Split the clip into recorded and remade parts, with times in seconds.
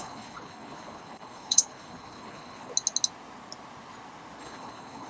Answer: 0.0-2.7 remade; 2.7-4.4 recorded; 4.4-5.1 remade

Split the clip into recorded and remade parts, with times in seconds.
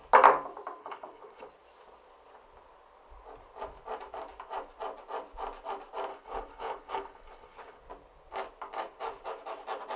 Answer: 0.0-0.8 recorded; 0.8-1.5 remade; 1.5-6.1 recorded; 6.1-7.8 remade; 7.8-10.0 recorded